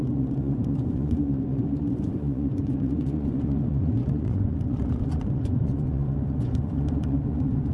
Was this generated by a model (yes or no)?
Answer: yes